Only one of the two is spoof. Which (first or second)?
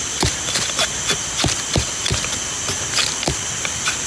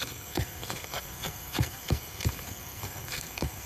second